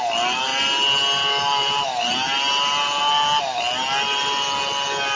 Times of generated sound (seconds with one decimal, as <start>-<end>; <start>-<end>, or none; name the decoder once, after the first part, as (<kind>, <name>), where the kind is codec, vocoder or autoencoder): none